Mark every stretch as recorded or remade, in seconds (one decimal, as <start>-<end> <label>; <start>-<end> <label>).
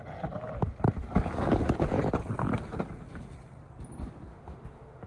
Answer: 0.0-4.3 recorded; 4.3-5.1 remade